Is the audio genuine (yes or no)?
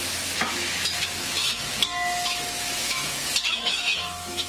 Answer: no